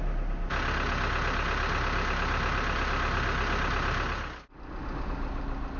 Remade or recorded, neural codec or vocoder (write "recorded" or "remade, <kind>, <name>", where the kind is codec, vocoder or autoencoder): recorded